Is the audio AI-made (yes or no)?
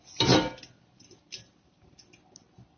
no